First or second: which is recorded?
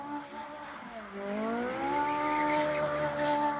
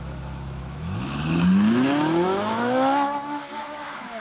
first